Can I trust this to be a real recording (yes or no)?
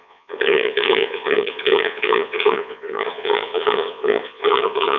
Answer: no